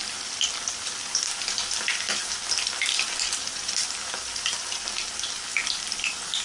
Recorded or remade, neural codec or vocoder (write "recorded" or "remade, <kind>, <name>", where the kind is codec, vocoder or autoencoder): recorded